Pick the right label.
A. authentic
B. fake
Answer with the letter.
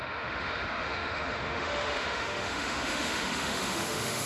B